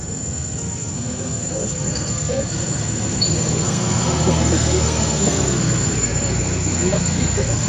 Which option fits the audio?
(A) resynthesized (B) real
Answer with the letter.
A